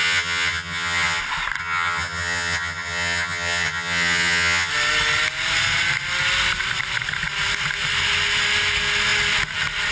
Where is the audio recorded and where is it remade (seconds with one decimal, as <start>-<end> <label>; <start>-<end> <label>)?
0.0-1.2 remade; 1.2-1.6 recorded; 1.6-4.7 remade; 4.7-9.9 recorded